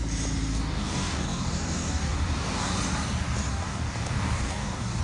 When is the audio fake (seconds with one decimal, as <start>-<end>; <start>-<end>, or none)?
0.5-2.7; 3.5-5.0